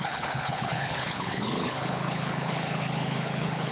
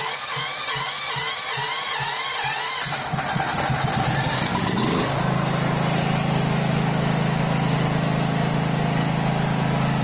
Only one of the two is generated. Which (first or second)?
first